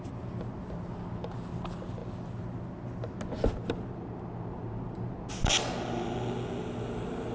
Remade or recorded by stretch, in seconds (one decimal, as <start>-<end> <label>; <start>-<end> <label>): 0.0-7.3 recorded